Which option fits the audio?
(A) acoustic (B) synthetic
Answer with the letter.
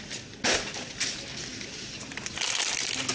A